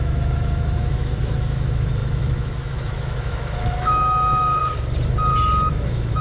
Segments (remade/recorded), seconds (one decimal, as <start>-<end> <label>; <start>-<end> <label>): 0.0-4.6 remade; 4.6-5.7 recorded; 5.7-6.2 remade